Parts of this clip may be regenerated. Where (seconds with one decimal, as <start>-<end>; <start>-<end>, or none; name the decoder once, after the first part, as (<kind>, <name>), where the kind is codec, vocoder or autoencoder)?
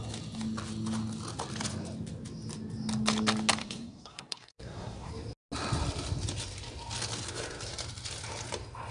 3.6-5.1 (codec, SNAC)